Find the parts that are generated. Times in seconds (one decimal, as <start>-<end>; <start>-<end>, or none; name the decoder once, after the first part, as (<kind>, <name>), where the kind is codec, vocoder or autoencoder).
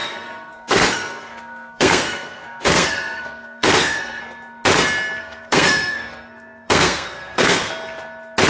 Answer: 0.0-4.2 (codec, SNAC); 5.2-7.7